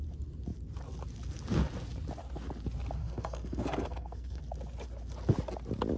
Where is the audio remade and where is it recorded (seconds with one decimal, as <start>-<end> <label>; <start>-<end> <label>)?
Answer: 0.0-3.0 recorded; 3.0-4.4 remade; 4.4-6.0 recorded